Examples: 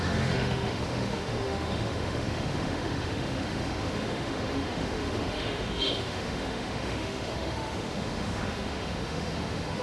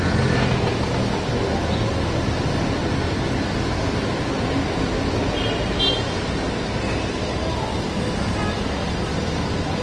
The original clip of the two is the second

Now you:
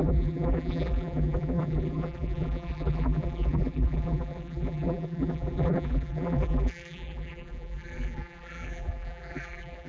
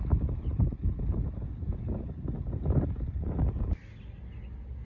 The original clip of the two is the second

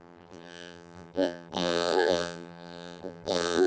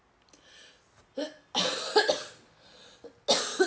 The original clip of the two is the second